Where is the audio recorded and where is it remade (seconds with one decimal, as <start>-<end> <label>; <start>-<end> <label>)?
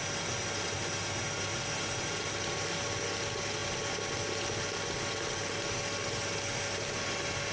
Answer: 0.0-7.5 recorded